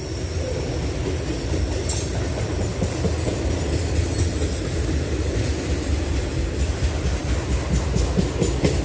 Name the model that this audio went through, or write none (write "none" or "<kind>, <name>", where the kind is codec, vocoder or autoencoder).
none